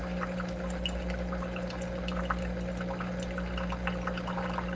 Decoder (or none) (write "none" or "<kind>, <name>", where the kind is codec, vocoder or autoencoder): none